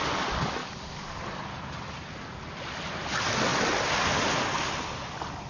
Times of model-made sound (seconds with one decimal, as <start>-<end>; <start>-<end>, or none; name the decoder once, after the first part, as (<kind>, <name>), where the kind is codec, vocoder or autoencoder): 0.6-1.2 (codec, DAC)